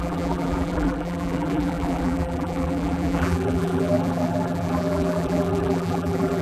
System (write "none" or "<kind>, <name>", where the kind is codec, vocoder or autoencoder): vocoder, BigVGAN v2